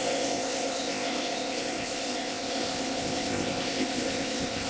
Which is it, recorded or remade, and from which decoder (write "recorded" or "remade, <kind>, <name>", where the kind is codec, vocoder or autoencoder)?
remade, codec, ZipCodec